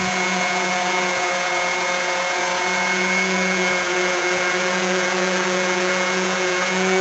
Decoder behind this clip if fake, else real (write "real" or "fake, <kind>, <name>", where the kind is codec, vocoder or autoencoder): fake, vocoder, Vocos